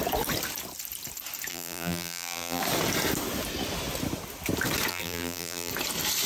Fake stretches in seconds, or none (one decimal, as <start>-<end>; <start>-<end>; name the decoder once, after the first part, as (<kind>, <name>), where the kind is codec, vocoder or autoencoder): 1.5-2.6 (vocoder, BigVGAN v2); 4.9-5.7